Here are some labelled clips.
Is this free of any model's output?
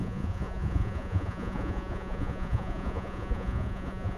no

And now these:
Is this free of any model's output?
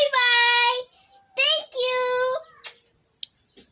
yes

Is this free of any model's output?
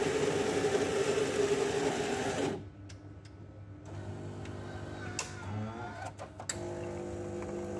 yes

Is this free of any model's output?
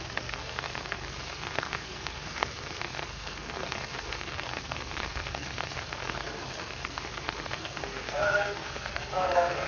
no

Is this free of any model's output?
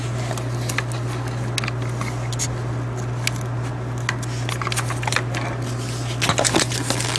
yes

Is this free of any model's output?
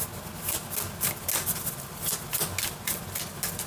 yes